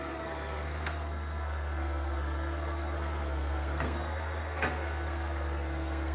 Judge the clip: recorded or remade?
remade